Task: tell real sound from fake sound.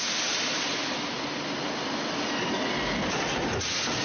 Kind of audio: real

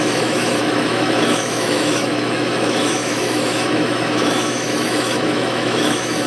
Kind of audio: fake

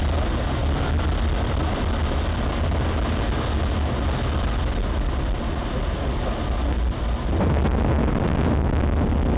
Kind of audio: real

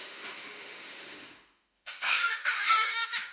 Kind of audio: fake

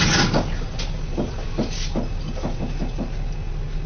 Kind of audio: real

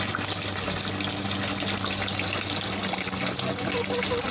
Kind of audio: real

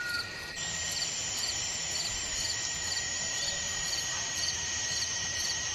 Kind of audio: real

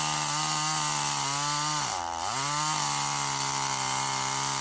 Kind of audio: real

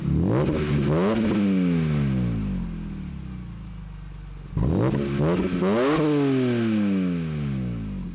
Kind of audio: real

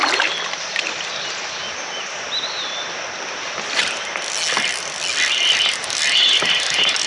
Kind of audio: real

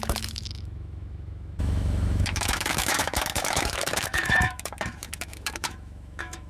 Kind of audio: fake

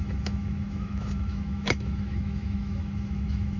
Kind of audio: fake